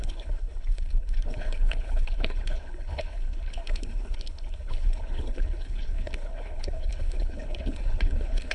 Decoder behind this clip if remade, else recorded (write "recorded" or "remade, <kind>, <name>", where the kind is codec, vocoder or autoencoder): remade, codec, HILCodec